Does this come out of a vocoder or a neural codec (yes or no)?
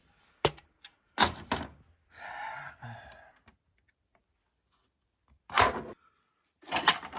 no